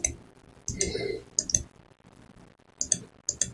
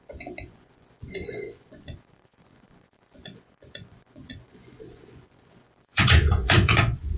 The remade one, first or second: second